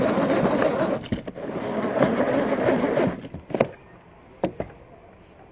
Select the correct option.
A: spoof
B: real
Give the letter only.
B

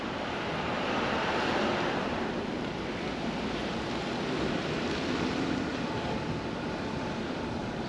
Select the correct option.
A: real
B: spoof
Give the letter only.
B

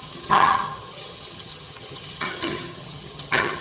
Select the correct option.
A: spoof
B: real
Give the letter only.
A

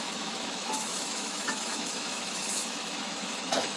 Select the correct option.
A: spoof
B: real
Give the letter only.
A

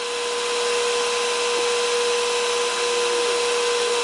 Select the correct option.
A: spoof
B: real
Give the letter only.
B